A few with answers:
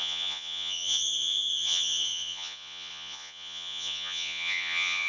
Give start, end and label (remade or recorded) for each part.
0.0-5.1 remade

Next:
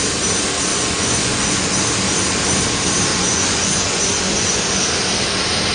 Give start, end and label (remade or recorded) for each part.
0.0-0.7 recorded; 0.7-1.7 remade; 1.7-3.1 recorded; 3.1-4.6 remade; 4.6-5.7 recorded